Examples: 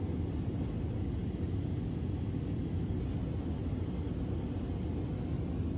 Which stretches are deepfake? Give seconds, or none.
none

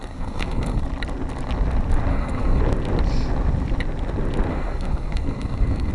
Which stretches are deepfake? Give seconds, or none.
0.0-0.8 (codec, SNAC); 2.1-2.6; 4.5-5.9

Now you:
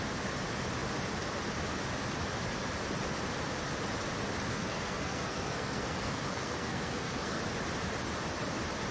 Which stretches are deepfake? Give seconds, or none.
4.5-7.4 (codec, SNAC)